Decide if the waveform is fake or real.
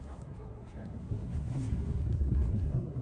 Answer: fake